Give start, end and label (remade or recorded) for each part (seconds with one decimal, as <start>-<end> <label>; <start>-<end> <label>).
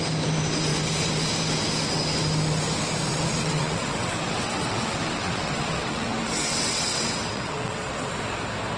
0.0-3.1 recorded; 3.1-8.1 remade; 8.1-8.8 recorded